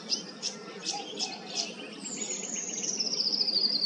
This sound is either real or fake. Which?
real